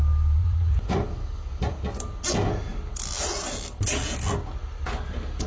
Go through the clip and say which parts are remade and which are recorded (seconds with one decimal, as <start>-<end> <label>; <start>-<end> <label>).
0.0-0.4 recorded; 0.4-1.0 remade; 1.0-5.5 recorded